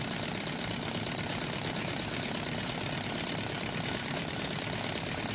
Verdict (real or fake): real